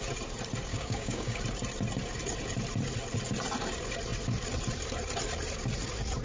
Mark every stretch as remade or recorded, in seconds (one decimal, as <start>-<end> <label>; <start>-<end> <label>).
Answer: 0.0-0.7 recorded; 0.7-1.4 remade; 1.4-6.2 recorded